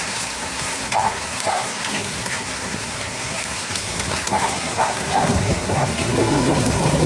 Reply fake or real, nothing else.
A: fake